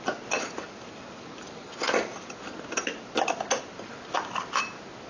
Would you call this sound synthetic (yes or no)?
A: no